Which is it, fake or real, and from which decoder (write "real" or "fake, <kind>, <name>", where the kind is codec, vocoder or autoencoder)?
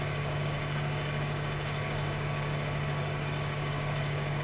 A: fake, codec, DAC